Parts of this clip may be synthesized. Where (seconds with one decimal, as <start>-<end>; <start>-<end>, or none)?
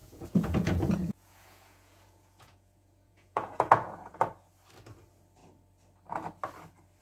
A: 0.0-4.2